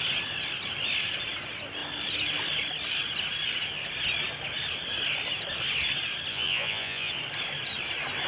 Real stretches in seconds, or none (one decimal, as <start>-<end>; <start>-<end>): 0.0-6.3; 7.1-8.3